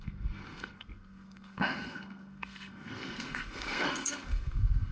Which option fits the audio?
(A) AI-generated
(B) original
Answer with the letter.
A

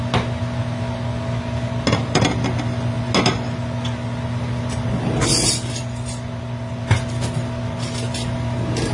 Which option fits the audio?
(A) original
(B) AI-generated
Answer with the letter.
A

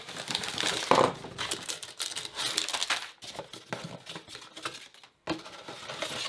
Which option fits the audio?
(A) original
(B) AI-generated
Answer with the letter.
A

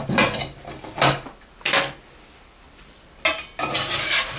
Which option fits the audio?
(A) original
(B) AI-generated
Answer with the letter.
A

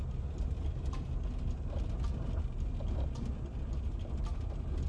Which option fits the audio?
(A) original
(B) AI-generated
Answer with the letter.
A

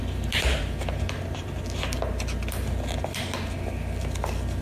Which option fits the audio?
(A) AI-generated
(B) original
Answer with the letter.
B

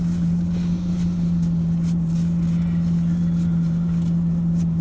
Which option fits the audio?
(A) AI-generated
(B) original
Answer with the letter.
B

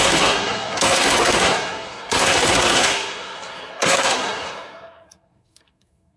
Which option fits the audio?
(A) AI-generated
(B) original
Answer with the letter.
A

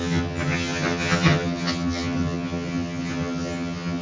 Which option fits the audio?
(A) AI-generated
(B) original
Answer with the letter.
A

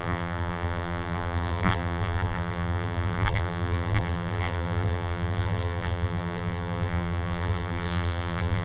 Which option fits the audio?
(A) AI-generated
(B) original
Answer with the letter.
A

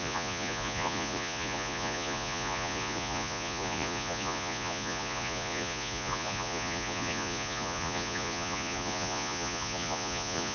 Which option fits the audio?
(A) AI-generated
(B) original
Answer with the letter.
A